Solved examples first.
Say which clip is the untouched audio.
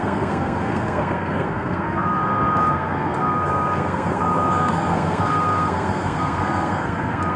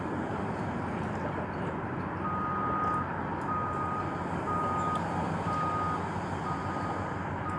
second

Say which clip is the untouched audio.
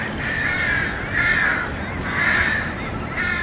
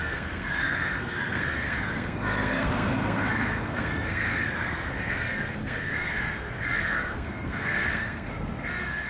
first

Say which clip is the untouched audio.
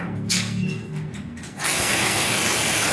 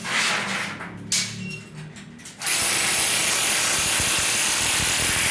second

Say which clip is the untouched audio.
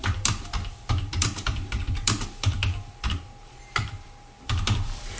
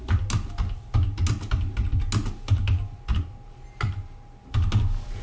second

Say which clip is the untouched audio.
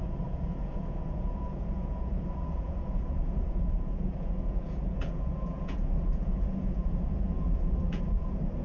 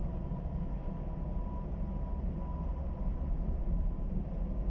second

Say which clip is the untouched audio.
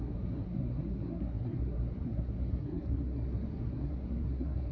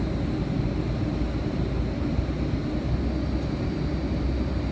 second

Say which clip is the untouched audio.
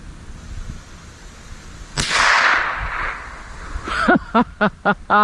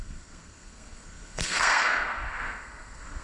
first